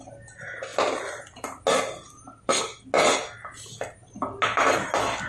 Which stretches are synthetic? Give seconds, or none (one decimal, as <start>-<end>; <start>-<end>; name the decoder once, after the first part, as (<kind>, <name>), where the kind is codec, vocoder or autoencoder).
none